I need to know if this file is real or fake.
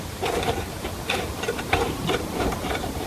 fake